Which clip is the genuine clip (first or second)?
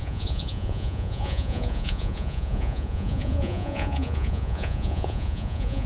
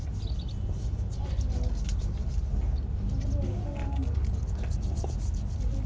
second